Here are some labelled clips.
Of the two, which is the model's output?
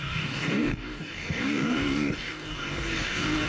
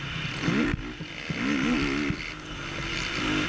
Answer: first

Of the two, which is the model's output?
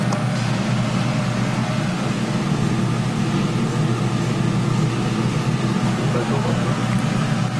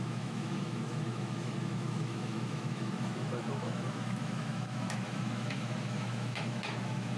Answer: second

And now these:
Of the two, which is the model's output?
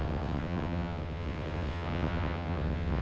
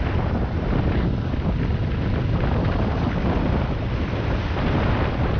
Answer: first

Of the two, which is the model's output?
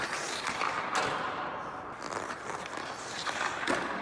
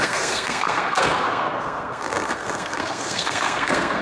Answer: second